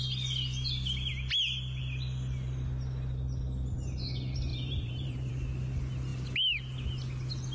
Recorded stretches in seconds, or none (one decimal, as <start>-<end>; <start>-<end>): 0.0-4.5; 5.3-7.5